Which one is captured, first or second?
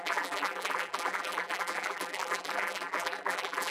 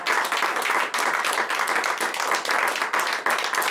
second